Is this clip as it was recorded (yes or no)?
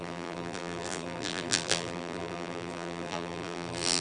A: no